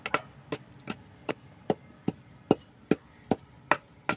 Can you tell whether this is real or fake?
real